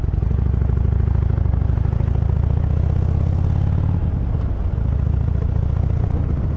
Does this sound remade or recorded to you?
recorded